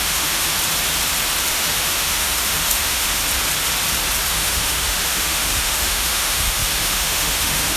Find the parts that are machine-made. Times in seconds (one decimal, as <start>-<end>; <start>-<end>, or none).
0.0-0.5; 1.5-3.2; 4.3-7.8